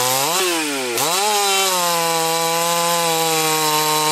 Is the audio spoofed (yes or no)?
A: no